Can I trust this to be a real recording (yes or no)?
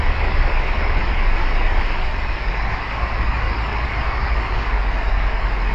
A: no